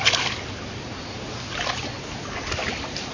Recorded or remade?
recorded